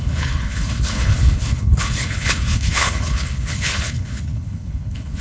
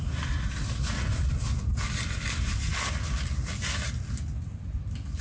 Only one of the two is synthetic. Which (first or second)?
first